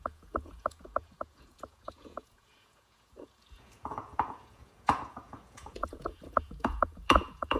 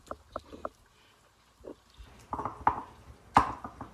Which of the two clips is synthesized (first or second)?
first